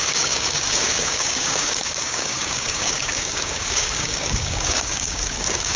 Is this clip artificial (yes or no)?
yes